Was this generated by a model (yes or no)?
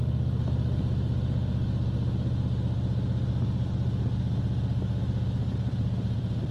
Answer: no